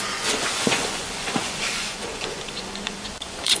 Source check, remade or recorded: remade